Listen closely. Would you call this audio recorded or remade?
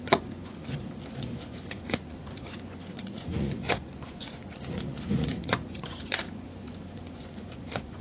remade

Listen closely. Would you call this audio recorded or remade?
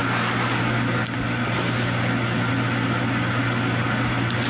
recorded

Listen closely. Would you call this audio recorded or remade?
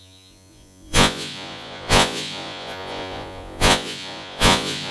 remade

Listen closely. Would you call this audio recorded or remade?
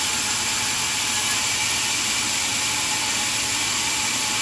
remade